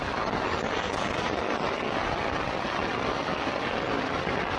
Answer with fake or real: real